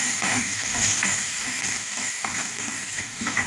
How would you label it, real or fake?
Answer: fake